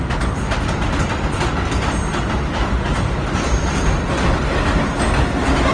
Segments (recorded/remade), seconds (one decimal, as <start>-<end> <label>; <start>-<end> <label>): 0.0-5.7 recorded